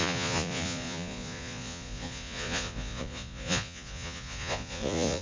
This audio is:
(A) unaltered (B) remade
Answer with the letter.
B